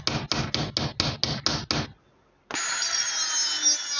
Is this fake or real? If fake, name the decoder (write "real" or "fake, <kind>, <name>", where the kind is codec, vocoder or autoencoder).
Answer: real